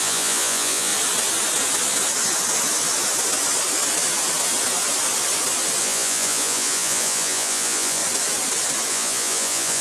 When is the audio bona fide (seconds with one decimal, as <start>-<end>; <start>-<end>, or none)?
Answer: 0.9-5.8; 8.0-8.9